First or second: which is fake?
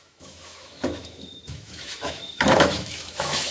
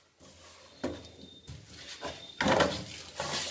first